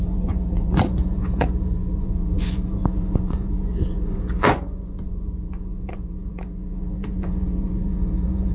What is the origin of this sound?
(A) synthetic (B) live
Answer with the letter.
A